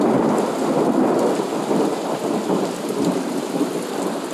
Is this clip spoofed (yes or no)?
no